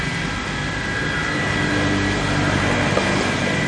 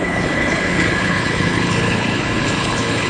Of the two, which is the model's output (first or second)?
second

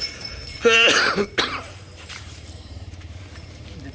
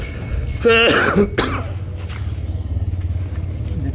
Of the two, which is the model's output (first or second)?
first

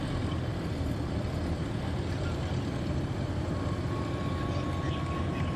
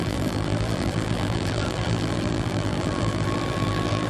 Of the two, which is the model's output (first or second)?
second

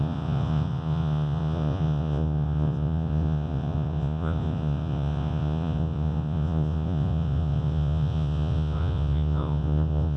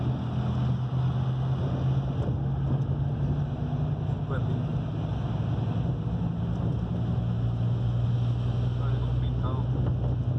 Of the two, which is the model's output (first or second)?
first